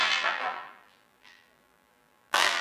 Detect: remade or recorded remade